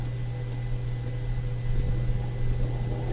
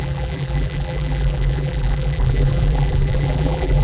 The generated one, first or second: second